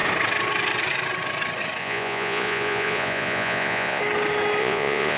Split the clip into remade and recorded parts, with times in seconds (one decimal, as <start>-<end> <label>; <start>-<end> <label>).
0.0-1.8 recorded; 1.8-4.0 remade; 4.0-4.6 recorded; 4.6-5.2 remade